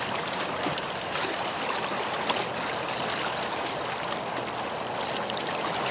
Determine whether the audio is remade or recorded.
recorded